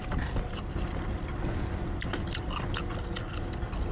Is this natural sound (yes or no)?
yes